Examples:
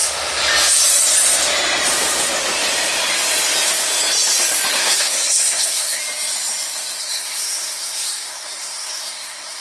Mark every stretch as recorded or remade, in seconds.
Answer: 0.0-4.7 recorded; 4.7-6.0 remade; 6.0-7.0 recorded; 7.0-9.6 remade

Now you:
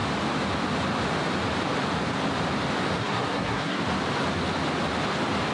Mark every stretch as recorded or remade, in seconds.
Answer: 0.0-3.0 recorded; 3.0-3.8 remade; 3.8-5.5 recorded

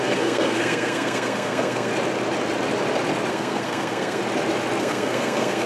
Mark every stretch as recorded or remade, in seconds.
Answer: 0.0-1.9 remade; 1.9-3.3 recorded; 3.3-4.2 remade; 4.2-4.8 recorded; 4.8-5.7 remade